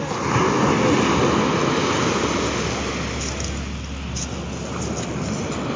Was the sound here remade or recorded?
recorded